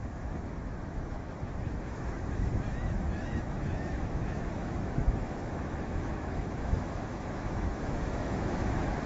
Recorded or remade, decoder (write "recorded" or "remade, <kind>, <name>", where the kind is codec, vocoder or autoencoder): remade, autoencoder, DAC-VAE